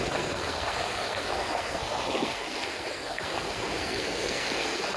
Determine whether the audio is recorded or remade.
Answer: remade